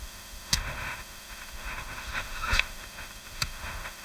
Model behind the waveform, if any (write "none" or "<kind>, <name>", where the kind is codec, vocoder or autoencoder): autoencoder, DAC-VAE